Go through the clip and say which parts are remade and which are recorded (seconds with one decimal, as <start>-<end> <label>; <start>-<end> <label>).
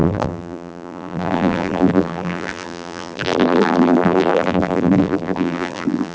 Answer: 0.0-6.1 remade